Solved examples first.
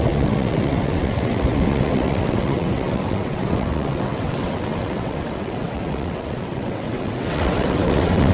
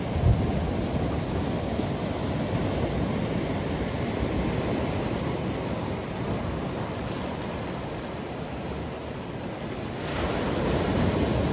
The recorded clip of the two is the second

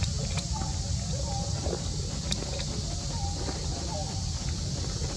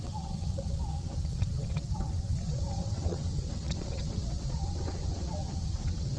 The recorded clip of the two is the first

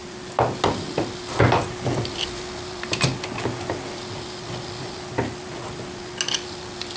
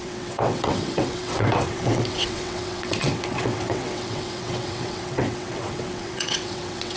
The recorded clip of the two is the first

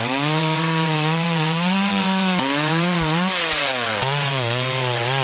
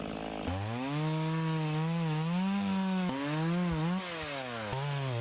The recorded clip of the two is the second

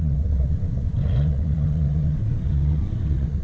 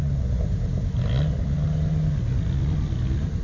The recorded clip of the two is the second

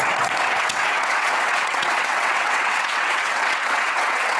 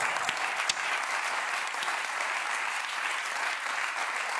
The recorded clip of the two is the second